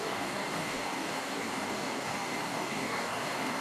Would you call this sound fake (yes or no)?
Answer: yes